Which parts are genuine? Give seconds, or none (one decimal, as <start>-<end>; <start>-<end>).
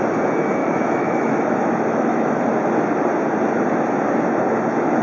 0.0-0.6; 2.4-5.0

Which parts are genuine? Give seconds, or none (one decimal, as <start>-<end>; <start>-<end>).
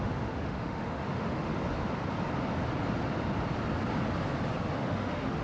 1.5-4.7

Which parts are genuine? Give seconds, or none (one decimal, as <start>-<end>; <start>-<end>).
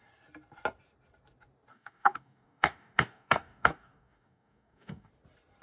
0.0-1.7; 5.1-5.6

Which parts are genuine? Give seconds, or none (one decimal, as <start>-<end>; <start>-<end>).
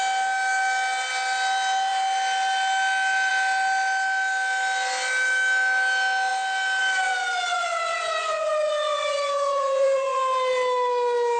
0.0-7.5; 10.2-11.4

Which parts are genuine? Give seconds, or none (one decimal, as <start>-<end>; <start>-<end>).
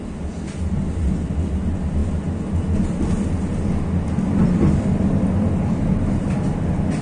0.0-7.0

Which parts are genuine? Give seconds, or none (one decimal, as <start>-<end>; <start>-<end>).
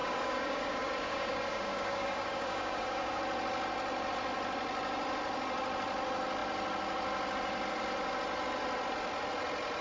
3.2-9.8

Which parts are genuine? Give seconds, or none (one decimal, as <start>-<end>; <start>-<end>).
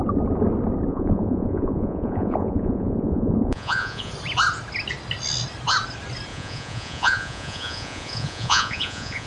0.0-0.9; 4.1-6.3